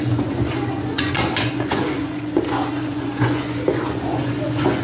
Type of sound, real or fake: fake